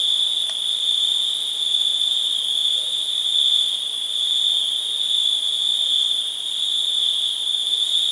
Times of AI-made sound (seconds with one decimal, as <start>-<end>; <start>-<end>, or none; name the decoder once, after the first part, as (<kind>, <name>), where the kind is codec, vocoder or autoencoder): 2.6-4.6 (vocoder, BigVGAN v2); 5.7-8.1